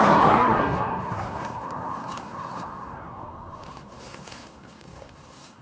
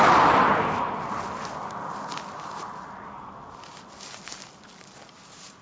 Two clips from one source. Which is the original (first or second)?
second